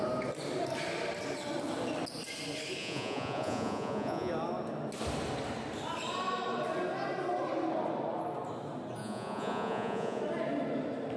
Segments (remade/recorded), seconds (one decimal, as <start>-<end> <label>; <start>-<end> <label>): 0.0-2.8 recorded; 2.8-4.3 remade; 4.3-9.0 recorded; 9.0-10.2 remade; 10.2-11.2 recorded